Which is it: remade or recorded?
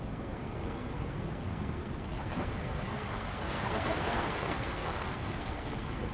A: remade